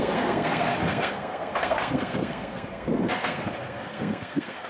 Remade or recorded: remade